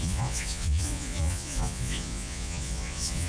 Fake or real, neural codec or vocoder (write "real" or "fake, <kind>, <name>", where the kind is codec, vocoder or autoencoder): fake, vocoder, Vocos